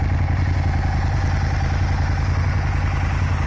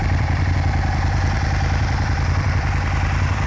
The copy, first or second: second